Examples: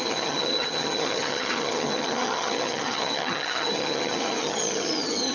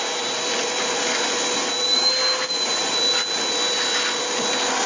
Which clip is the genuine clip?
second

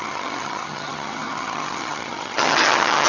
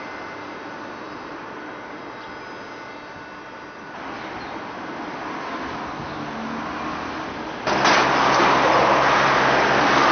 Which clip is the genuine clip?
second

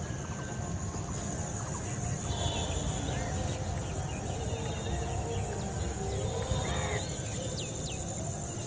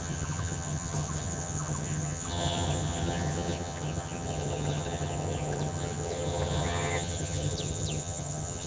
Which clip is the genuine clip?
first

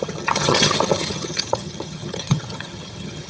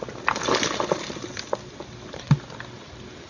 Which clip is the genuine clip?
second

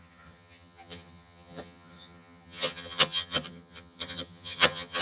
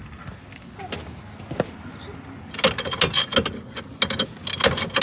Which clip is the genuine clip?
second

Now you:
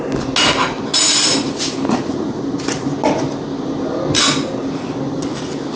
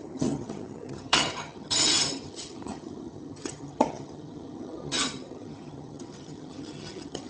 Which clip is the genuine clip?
first